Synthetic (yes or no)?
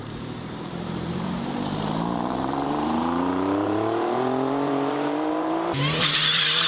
yes